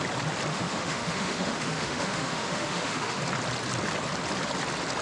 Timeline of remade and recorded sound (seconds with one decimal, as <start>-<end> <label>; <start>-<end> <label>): 0.0-0.5 recorded; 0.5-3.2 remade; 3.2-5.0 recorded